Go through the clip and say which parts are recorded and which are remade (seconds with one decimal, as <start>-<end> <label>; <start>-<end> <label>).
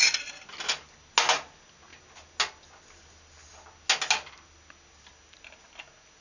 0.0-6.2 recorded